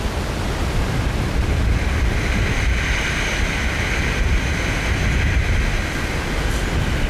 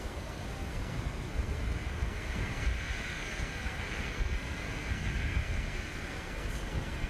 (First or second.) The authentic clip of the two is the first